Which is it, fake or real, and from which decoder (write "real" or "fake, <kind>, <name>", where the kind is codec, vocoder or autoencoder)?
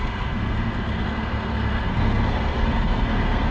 fake, codec, SNAC